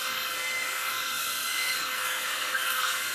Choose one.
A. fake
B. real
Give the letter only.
A